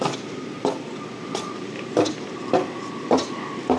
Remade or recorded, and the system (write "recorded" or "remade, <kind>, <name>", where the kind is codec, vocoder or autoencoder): recorded